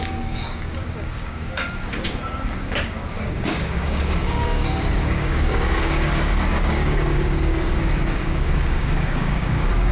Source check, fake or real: fake